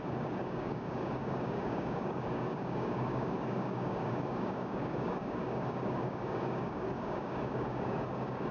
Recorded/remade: remade